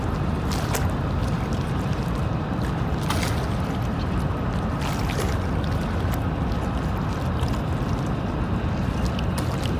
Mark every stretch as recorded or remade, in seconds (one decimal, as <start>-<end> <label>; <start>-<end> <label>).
0.0-1.2 recorded; 1.2-2.2 remade; 2.2-9.8 recorded